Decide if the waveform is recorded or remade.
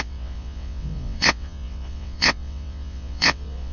remade